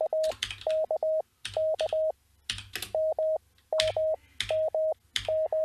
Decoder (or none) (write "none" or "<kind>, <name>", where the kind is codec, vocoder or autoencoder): none